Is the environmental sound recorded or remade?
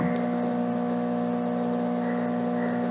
recorded